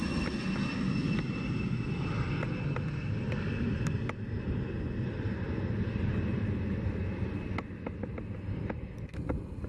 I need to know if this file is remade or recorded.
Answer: recorded